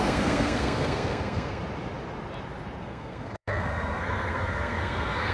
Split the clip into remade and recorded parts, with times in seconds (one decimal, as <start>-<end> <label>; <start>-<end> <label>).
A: 0.0-1.6 remade; 1.6-2.8 recorded; 2.8-5.3 remade